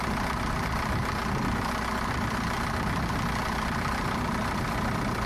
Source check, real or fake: real